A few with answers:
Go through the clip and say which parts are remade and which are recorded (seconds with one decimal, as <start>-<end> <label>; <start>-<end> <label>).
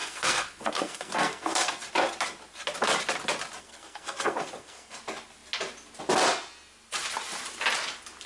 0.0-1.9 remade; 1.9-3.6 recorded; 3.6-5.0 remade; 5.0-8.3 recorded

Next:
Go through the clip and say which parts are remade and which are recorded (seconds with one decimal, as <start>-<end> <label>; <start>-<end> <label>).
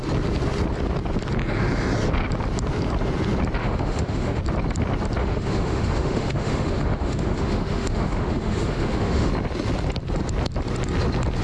0.0-3.6 recorded; 3.6-4.4 remade; 4.4-5.2 recorded; 5.2-9.3 remade; 9.3-11.4 recorded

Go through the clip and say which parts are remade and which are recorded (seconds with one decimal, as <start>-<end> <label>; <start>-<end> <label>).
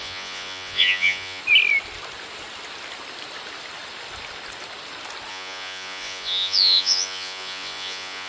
0.0-1.4 remade; 1.4-5.3 recorded; 5.3-8.3 remade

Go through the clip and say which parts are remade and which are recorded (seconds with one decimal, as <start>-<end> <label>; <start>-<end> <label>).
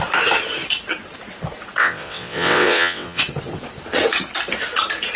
0.0-1.8 recorded; 1.8-3.2 remade; 3.2-5.2 recorded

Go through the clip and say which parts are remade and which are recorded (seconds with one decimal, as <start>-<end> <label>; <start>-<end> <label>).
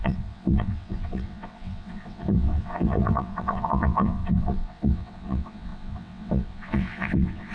0.0-7.5 remade